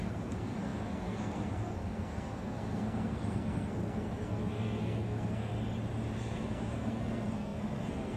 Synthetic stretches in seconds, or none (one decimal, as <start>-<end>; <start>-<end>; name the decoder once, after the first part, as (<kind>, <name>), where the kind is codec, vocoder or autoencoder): 0.0-5.5 (codec, SNAC); 6.2-8.2